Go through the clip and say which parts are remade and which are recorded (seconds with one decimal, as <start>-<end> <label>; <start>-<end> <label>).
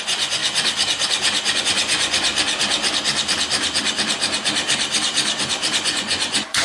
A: 0.0-0.4 remade; 0.4-1.6 recorded; 1.6-2.3 remade; 2.3-5.8 recorded; 5.8-6.6 remade